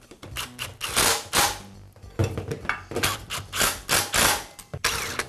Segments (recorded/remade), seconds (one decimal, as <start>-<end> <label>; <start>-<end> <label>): 0.0-5.3 recorded